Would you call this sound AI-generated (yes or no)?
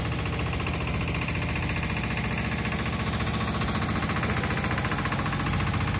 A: no